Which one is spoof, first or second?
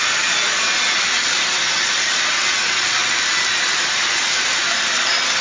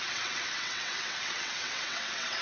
second